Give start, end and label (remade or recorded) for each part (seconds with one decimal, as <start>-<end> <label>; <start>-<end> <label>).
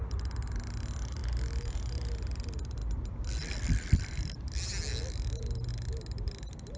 0.0-6.8 recorded